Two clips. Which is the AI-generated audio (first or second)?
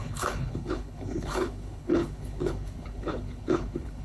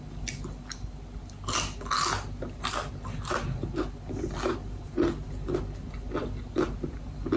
first